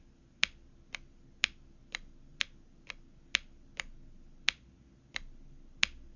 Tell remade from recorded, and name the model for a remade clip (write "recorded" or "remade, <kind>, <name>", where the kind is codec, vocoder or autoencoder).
recorded